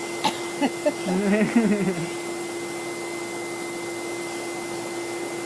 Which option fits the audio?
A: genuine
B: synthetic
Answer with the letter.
A